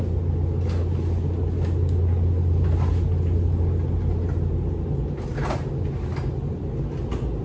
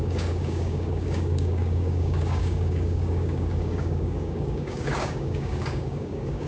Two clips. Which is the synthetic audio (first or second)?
second